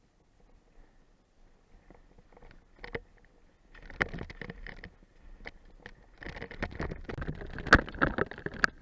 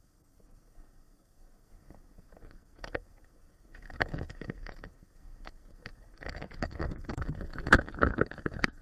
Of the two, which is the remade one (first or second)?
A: second